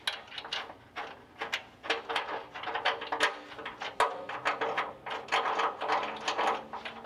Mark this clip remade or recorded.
recorded